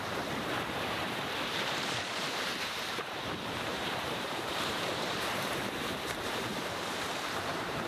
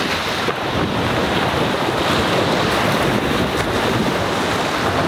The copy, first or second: first